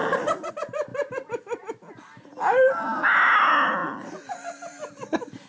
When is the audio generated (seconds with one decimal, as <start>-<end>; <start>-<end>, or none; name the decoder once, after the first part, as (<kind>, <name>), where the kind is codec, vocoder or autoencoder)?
none